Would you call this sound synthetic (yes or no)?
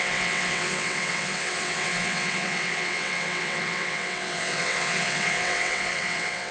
yes